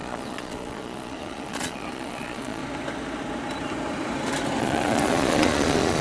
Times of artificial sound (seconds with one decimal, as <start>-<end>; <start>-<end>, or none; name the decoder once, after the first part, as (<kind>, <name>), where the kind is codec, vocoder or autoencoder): 0.0-2.6 (vocoder, Vocos); 4.6-6.0